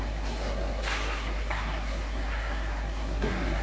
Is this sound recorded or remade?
remade